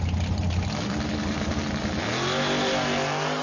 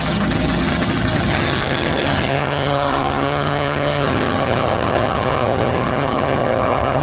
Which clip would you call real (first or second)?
first